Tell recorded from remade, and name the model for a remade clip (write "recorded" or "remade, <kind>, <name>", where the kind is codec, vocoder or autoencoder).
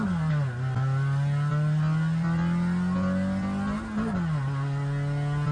recorded